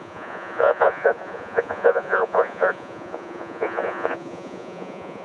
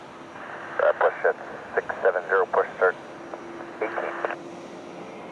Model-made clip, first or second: first